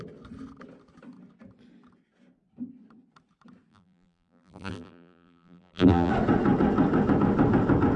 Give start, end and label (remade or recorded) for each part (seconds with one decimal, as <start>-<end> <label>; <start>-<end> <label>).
0.0-3.7 recorded; 3.7-6.1 remade; 6.1-8.0 recorded